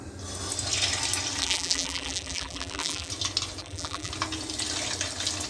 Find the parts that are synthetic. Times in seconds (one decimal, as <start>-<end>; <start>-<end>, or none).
1.4-3.1; 3.6-4.1